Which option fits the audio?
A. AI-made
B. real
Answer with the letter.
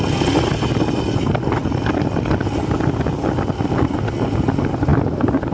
B